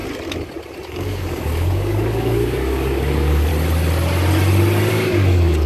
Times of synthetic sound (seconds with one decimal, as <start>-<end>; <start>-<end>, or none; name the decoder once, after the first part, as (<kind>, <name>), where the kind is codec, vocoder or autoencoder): 0.9-3.5 (codec, DAC); 4.9-5.7